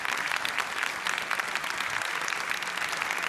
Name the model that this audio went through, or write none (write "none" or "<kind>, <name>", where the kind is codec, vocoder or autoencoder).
none